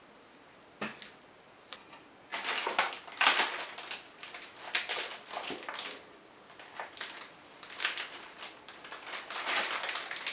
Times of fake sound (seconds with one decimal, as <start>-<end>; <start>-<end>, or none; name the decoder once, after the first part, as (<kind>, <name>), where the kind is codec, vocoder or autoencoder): none